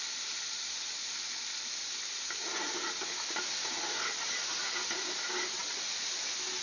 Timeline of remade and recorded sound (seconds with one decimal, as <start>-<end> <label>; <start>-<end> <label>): 0.0-6.6 recorded